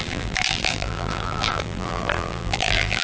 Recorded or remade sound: remade